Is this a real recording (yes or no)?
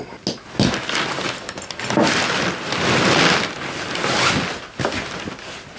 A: yes